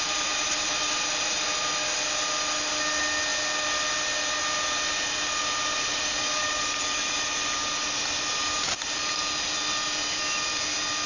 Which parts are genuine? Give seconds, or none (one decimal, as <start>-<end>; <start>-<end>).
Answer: 0.0-11.1